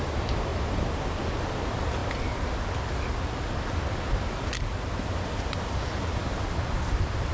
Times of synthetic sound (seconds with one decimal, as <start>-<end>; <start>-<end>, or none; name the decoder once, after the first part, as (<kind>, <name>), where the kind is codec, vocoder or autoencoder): 0.0-0.5 (vocoder, BigVGAN v2); 1.1-2.0; 5.4-6.2; 6.7-7.3